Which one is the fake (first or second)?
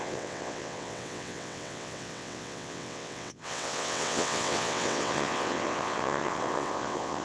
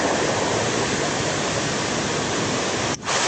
first